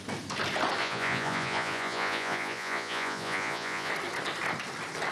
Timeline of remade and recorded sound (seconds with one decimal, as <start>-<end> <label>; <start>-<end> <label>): 0.0-0.8 recorded; 0.8-3.9 remade; 3.9-5.1 recorded